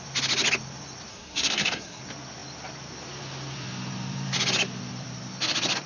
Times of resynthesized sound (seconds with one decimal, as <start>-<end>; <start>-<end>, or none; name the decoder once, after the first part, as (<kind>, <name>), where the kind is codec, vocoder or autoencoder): 1.1-2.0 (codec, SNAC)